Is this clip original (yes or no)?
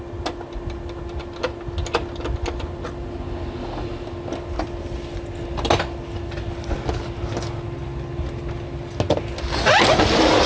yes